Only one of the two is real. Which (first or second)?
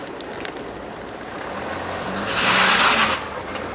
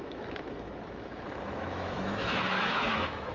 first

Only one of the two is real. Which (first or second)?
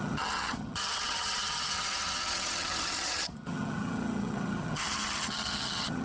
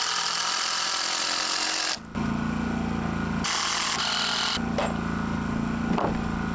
second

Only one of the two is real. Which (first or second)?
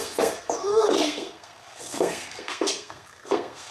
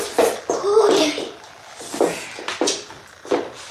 second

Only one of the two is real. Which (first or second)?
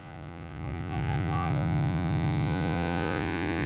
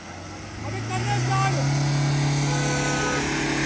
second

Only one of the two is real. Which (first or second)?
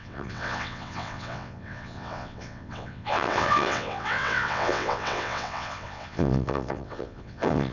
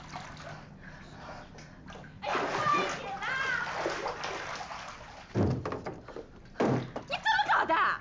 second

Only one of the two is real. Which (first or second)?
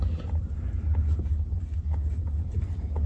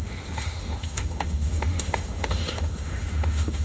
first